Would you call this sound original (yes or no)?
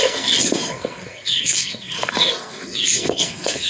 no